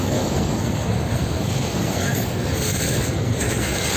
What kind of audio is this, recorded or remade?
remade